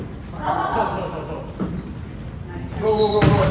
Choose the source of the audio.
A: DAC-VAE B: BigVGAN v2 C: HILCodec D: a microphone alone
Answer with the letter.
D